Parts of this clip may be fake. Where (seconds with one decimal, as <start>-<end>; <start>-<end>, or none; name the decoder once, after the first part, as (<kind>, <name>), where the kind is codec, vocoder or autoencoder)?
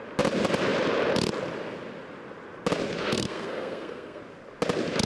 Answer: 3.0-4.2 (codec, SNAC)